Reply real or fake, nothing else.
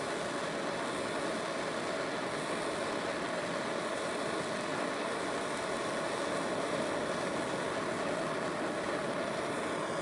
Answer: real